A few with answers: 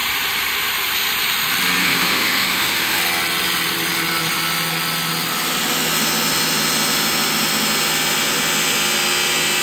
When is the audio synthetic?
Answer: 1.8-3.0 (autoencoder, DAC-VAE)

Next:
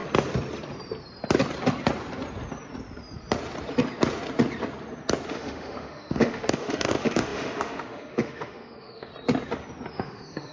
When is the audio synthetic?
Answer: 5.3-9.1 (autoencoder, DAC-VAE); 9.9-10.5

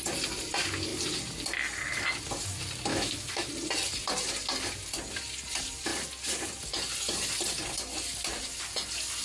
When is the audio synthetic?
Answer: 2.9-3.5 (autoencoder, DAC-VAE)